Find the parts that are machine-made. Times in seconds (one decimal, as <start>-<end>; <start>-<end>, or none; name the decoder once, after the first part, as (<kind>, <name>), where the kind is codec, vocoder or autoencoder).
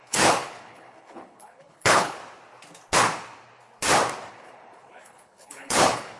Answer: 0.0-2.2 (codec, HILCodec); 4.3-6.2